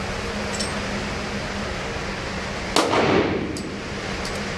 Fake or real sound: real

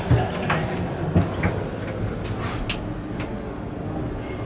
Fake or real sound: real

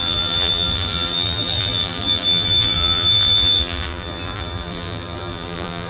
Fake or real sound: fake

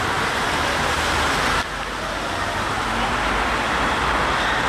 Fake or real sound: real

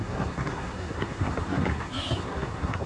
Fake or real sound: fake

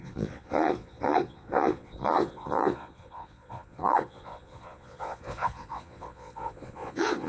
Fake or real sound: fake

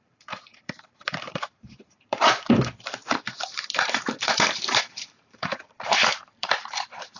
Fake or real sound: fake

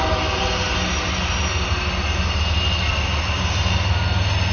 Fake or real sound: real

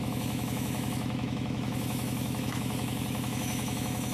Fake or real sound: fake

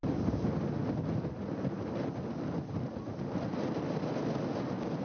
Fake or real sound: real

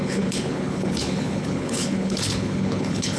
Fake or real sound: fake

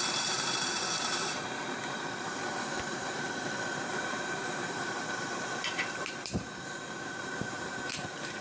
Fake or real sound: fake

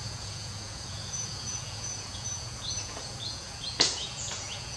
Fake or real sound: fake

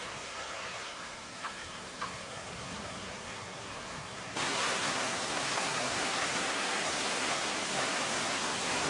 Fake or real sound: fake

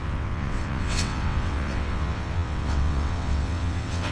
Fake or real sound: fake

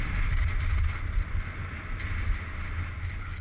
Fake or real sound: real